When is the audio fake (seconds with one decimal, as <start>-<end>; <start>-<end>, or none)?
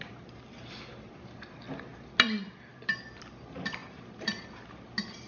3.8-4.6